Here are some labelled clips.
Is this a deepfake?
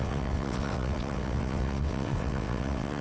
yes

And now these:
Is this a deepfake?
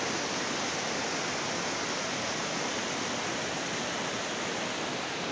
no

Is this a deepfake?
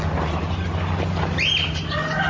no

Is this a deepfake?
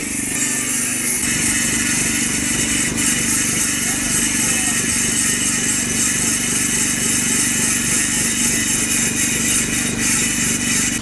no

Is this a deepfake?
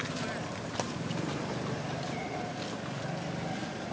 no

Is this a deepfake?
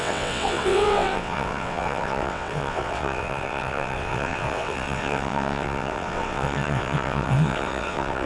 yes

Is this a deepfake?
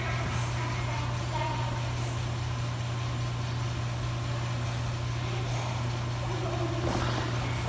no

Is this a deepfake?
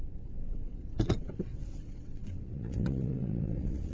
yes